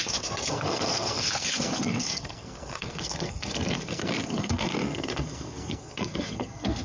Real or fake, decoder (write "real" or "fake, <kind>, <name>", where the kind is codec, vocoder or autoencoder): fake, codec, SNAC